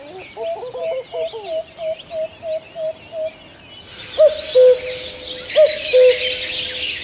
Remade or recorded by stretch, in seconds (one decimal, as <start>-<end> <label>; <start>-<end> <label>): 0.0-7.0 recorded